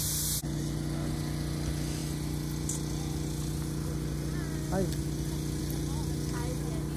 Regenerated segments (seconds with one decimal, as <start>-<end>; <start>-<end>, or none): none